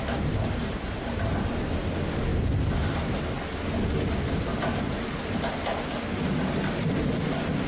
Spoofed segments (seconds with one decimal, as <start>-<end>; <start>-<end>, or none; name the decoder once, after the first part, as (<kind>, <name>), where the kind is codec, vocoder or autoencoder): none